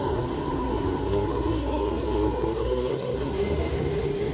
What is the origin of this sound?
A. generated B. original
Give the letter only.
A